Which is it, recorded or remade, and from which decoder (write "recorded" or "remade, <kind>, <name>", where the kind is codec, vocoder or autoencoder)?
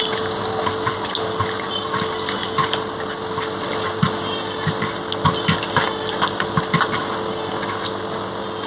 recorded